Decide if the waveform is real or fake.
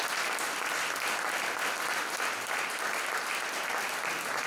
real